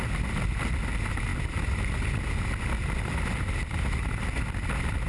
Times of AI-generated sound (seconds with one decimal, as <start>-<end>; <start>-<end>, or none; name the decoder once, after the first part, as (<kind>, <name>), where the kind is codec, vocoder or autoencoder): none